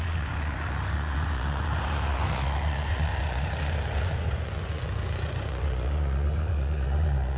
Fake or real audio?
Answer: fake